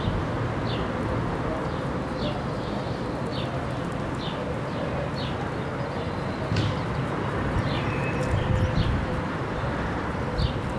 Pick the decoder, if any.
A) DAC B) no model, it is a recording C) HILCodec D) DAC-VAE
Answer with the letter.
B